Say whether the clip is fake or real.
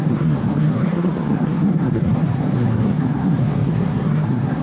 fake